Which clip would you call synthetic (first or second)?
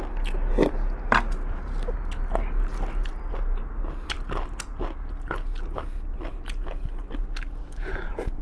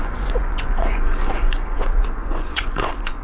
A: second